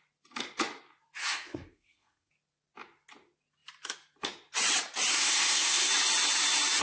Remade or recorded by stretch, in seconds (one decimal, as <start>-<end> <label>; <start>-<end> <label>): 0.0-1.2 recorded; 1.2-2.3 remade; 2.3-5.1 recorded; 5.1-5.9 remade; 5.9-6.8 recorded